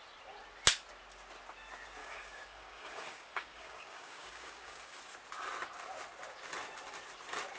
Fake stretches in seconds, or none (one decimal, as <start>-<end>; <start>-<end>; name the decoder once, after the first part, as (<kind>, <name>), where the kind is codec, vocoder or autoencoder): 2.0-5.0 (codec, DAC)